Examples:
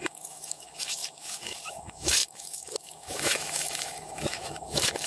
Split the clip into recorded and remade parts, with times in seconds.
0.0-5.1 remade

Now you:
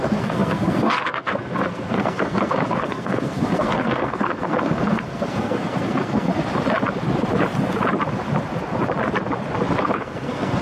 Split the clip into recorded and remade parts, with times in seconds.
0.0-6.3 remade; 6.3-9.8 recorded; 9.8-10.6 remade

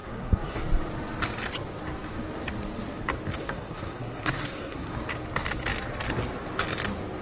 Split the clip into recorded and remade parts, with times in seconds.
0.0-0.6 remade; 0.6-3.4 recorded; 3.4-4.9 remade; 4.9-7.2 recorded

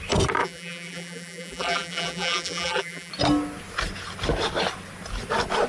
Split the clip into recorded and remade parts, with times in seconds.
0.0-0.4 recorded; 0.4-3.1 remade; 3.1-5.7 recorded